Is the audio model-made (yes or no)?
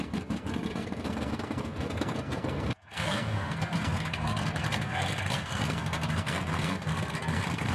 yes